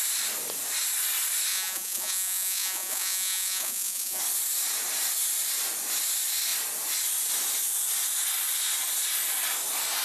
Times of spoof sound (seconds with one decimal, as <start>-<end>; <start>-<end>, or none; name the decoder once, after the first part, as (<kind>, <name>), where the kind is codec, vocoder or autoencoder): 1.5-4.2 (vocoder, Vocos)